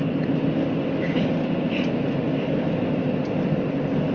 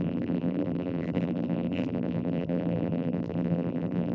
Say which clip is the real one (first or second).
first